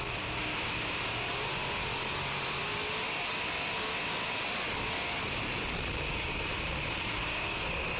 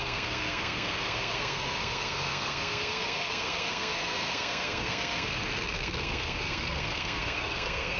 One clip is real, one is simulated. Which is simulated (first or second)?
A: second